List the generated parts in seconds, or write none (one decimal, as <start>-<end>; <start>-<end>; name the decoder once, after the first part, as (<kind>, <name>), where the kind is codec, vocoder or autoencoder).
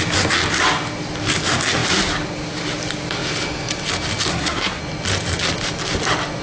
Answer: 4.3-4.8 (codec, SNAC)